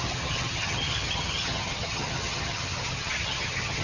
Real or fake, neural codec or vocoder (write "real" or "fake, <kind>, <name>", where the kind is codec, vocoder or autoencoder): fake, vocoder, HiFi-GAN